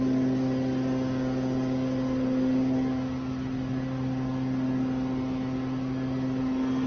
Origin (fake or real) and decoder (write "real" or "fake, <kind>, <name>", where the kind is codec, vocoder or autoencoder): real